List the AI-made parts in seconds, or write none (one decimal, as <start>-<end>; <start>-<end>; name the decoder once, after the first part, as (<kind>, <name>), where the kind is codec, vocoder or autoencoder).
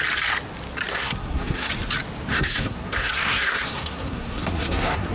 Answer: 0.9-1.7 (codec, SNAC); 2.3-5.1